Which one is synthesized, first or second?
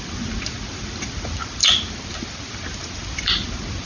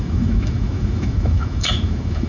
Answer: second